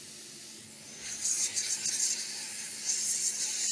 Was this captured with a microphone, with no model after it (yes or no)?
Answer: yes